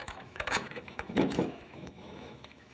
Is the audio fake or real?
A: fake